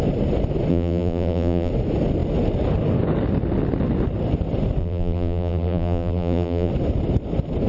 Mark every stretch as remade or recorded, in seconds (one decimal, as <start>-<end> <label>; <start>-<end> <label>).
0.0-0.7 recorded; 0.7-1.7 remade; 1.7-4.8 recorded; 4.8-6.7 remade; 6.7-7.7 recorded